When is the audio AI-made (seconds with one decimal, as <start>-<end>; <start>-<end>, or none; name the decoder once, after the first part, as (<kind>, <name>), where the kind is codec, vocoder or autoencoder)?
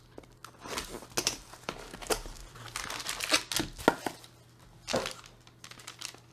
0.0-0.4 (vocoder, BigVGAN v2); 1.2-2.4